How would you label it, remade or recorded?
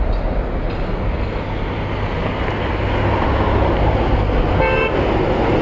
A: recorded